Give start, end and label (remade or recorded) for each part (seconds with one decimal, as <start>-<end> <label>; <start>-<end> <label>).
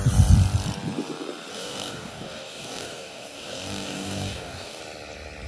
0.0-1.5 recorded; 1.5-4.8 remade; 4.8-5.5 recorded